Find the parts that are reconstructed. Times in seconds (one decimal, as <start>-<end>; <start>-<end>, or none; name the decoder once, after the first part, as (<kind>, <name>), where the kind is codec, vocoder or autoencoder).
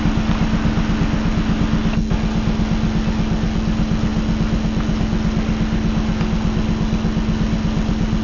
none